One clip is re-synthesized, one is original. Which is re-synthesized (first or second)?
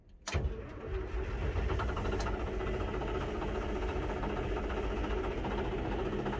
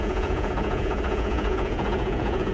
second